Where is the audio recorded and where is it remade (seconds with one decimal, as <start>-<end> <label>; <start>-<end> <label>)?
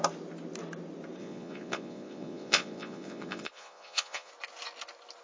0.0-1.2 recorded; 1.2-4.3 remade; 4.3-5.2 recorded